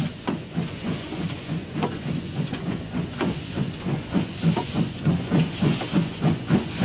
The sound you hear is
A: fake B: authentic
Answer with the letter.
A